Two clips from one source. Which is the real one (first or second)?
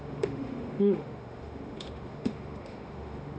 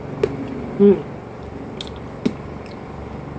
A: second